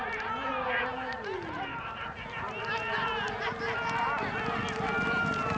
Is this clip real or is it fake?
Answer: real